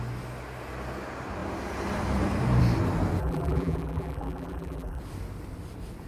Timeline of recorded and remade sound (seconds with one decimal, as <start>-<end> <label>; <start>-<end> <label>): 0.0-3.2 recorded; 3.2-5.0 remade; 5.0-6.1 recorded